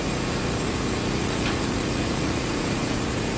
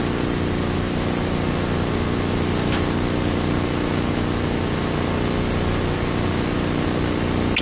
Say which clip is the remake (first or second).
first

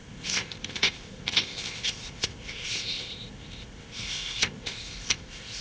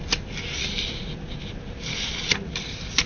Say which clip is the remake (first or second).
first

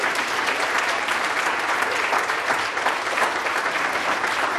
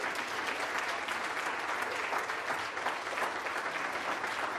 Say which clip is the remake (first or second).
first